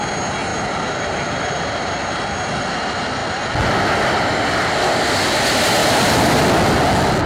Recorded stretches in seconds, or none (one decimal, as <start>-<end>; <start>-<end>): 0.0-0.5; 1.9-5.8; 6.4-7.3